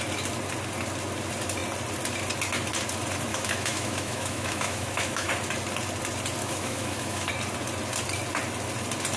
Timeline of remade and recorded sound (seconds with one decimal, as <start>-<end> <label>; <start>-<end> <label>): 0.0-3.3 recorded; 3.3-5.3 remade; 5.3-6.4 recorded; 6.4-7.3 remade; 7.3-9.2 recorded